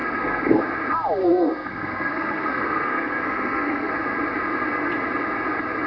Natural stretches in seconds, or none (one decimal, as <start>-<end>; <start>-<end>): 0.6-1.2; 3.9-5.9